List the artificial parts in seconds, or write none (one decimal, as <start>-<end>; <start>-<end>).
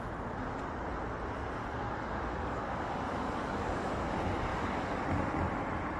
1.6-4.1; 4.5-5.0